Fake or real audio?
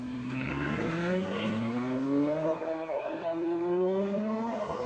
fake